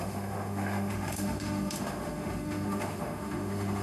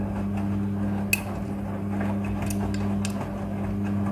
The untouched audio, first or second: second